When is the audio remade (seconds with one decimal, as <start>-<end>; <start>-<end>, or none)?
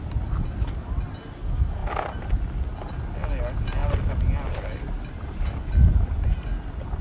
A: none